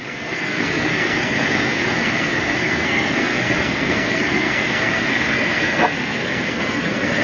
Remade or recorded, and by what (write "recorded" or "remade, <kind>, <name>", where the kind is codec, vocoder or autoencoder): remade, codec, SNAC